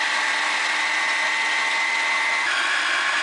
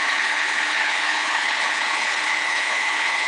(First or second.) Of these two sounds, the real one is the first